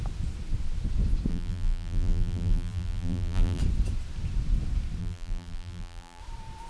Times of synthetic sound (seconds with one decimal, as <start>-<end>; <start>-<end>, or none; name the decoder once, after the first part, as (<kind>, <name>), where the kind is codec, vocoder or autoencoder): 1.3-3.6 (vocoder, BigVGAN v2); 5.0-6.2